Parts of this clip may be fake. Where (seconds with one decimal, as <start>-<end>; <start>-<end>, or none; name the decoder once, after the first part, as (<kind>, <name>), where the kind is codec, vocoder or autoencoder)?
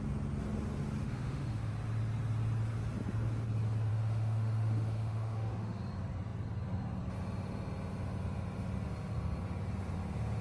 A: 1.0-1.7 (autoencoder, DAC-VAE); 3.9-5.8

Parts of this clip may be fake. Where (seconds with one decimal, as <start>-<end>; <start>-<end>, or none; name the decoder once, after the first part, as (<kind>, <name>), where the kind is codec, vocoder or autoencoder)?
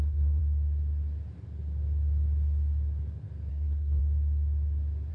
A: 0.0-0.4 (codec, SNAC); 3.5-4.0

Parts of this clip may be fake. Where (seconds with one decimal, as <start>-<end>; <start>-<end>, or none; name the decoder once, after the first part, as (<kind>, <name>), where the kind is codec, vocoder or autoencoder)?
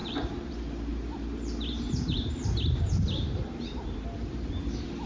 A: 0.0-0.5 (vocoder, BigVGAN v2); 0.9-4.0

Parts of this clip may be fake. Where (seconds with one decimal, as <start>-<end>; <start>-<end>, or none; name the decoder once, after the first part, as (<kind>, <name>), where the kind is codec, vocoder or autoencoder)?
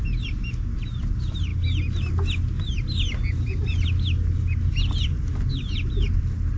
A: none